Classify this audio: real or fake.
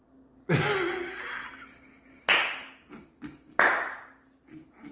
real